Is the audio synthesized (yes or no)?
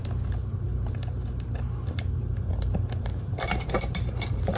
yes